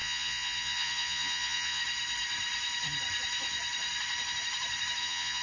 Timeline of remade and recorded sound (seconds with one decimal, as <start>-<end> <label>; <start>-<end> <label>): 0.0-1.8 remade; 1.8-5.0 recorded; 5.0-5.4 remade